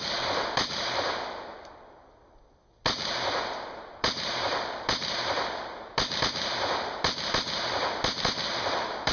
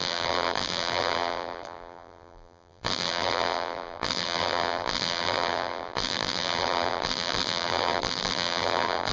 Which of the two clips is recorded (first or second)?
first